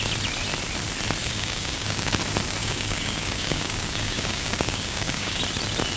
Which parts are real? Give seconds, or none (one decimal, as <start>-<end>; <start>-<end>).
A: 0.0-1.2; 2.2-2.6; 5.4-6.0